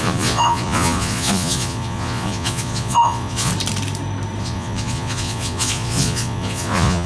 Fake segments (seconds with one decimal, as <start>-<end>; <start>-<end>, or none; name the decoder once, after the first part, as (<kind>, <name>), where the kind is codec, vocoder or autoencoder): 0.0-3.5 (vocoder, Vocos); 4.4-7.1